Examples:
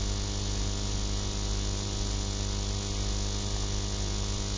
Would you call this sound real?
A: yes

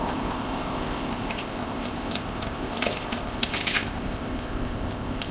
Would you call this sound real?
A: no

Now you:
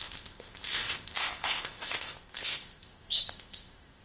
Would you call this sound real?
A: no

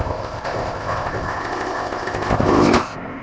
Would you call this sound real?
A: no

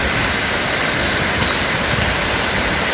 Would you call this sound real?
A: yes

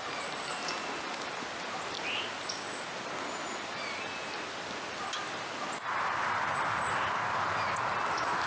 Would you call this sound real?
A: yes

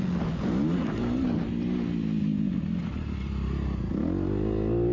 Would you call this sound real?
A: yes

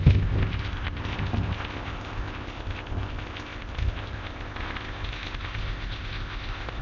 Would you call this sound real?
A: no